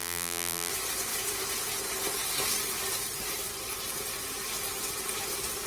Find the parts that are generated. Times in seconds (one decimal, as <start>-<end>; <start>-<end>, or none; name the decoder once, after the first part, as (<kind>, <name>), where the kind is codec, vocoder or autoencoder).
0.0-0.7 (vocoder, BigVGAN v2)